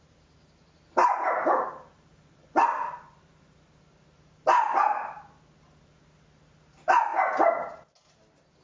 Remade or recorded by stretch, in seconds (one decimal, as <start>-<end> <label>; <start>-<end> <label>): 0.0-1.0 recorded; 1.0-3.8 remade; 3.8-8.6 recorded